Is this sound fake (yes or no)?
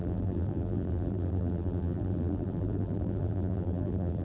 yes